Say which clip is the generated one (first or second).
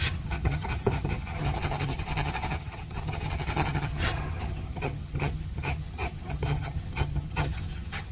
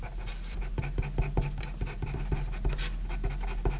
first